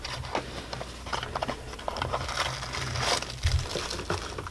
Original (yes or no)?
yes